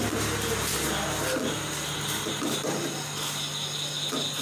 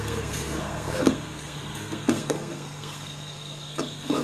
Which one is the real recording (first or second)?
first